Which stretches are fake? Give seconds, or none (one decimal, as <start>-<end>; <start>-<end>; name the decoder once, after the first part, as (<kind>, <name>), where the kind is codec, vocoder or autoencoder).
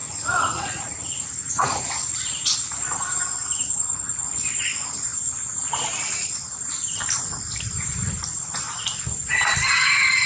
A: 0.0-1.8 (vocoder, Vocos)